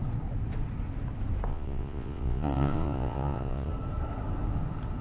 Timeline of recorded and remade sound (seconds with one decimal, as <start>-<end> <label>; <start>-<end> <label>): 0.0-1.5 recorded; 1.5-3.7 remade; 3.7-5.0 recorded